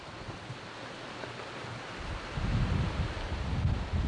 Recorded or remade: recorded